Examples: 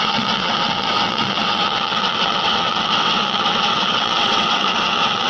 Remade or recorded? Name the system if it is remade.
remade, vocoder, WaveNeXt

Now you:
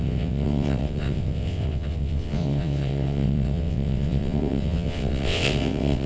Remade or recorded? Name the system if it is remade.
remade, vocoder, WaveNeXt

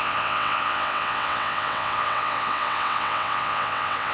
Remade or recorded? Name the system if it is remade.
remade, vocoder, WaveNeXt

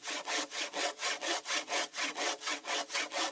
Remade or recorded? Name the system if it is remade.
remade, vocoder, WaveNeXt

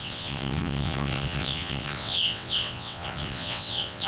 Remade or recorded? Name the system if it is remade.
remade, vocoder, WaveNeXt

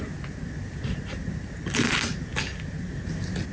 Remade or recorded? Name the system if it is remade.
recorded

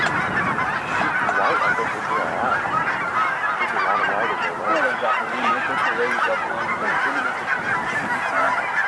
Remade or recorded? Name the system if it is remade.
recorded